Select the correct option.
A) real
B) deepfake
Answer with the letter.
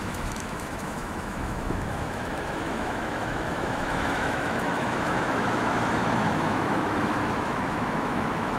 B